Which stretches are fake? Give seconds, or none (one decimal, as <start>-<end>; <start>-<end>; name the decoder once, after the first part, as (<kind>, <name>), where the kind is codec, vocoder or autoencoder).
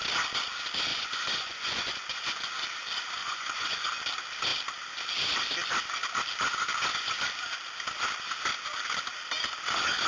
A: 0.9-2.5 (vocoder, Vocos); 3.2-3.9